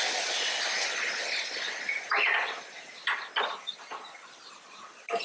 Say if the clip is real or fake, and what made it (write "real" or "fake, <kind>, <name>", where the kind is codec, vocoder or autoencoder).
real